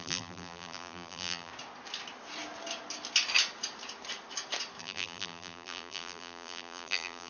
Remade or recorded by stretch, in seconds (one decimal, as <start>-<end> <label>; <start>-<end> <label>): 0.0-1.5 remade; 1.5-4.8 recorded; 4.8-7.3 remade